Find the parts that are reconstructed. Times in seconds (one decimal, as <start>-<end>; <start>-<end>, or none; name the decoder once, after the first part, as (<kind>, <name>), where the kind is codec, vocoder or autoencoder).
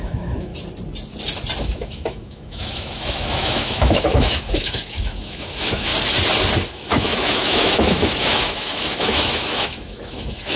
0.0-0.5 (autoencoder, DAC-VAE); 1.6-5.9; 6.7-10.6